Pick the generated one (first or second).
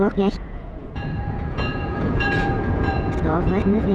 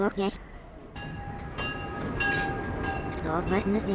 first